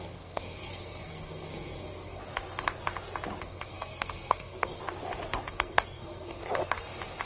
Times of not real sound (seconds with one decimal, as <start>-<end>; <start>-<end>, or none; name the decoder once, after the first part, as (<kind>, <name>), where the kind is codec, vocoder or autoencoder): 0.0-2.2 (codec, SNAC); 3.4-4.8; 5.5-6.4